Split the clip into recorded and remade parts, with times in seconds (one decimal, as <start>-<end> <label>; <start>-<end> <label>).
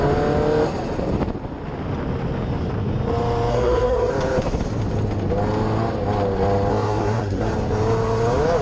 0.0-3.5 recorded; 3.5-4.1 remade; 4.1-6.7 recorded; 6.7-7.5 remade; 7.5-8.6 recorded